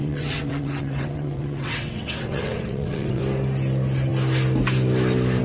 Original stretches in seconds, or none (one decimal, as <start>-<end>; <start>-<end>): 3.2-5.4